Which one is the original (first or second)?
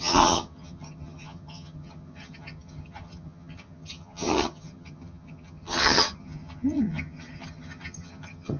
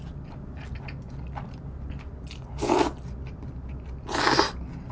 second